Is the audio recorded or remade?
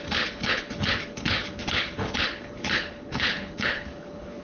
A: remade